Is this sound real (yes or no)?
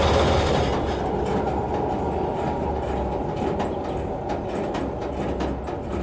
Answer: yes